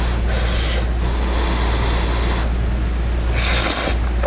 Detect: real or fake real